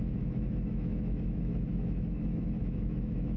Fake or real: fake